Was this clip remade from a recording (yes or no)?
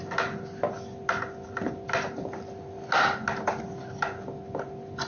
no